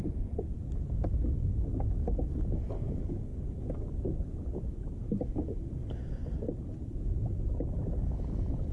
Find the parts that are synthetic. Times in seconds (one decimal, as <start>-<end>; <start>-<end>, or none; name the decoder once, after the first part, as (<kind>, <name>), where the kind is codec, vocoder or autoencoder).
none